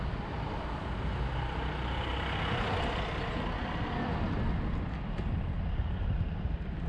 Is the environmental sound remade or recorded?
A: recorded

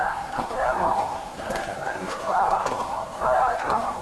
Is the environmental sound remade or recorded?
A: remade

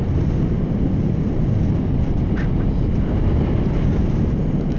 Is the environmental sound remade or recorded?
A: recorded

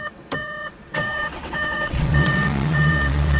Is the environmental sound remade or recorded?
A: remade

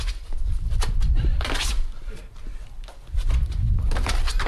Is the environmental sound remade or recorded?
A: recorded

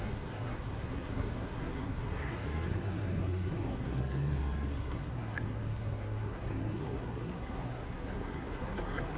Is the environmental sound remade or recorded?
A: remade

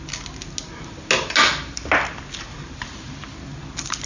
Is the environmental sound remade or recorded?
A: recorded